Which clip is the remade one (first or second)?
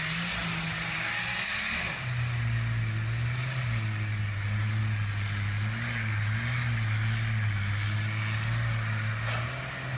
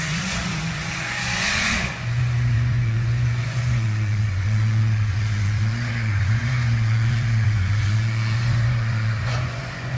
second